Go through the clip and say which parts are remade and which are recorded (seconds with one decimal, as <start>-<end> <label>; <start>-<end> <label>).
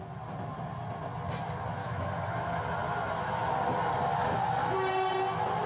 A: 0.0-1.8 recorded; 1.8-2.6 remade; 2.6-5.7 recorded